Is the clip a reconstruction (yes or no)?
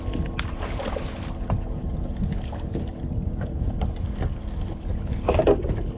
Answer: no